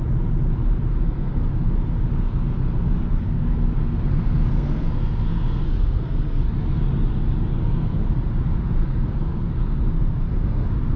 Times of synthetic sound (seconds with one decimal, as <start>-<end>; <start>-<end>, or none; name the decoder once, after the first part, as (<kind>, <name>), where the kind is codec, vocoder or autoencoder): 0.9-1.7 (codec, SNAC); 2.1-6.8; 7.5-8.1; 8.8-11.0